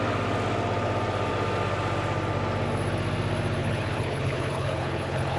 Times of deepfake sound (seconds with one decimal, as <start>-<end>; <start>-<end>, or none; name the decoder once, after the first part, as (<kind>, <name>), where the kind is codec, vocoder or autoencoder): 3.6-5.4 (codec, HILCodec)